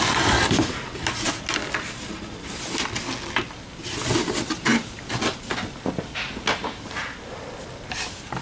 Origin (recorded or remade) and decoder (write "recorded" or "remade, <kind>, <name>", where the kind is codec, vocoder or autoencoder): recorded